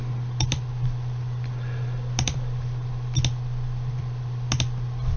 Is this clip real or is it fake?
real